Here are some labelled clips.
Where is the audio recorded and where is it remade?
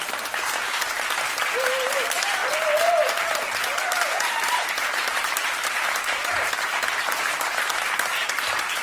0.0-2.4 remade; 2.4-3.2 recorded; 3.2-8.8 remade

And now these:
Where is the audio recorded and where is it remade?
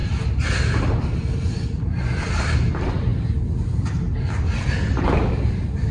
0.0-1.4 recorded; 1.4-3.1 remade; 3.1-4.4 recorded; 4.4-5.9 remade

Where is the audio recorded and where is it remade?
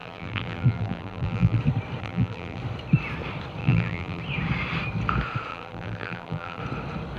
0.0-1.6 remade; 1.6-2.0 recorded; 2.0-2.6 remade; 2.6-3.6 recorded; 3.6-4.2 remade; 4.2-5.5 recorded; 5.5-6.6 remade; 6.6-7.2 recorded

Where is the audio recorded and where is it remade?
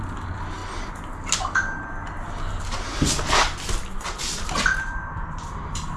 0.0-0.6 remade; 0.6-4.2 recorded; 4.2-6.0 remade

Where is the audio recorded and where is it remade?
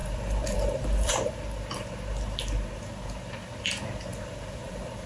0.0-1.1 remade; 1.1-4.1 recorded; 4.1-5.1 remade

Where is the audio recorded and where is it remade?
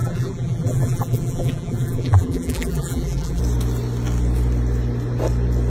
0.0-3.4 remade; 3.4-5.7 recorded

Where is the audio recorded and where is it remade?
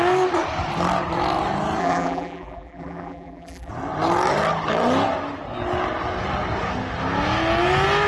0.0-1.8 recorded; 1.8-3.7 remade; 3.7-8.1 recorded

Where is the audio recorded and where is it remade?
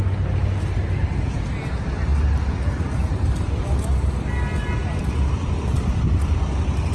0.0-6.9 recorded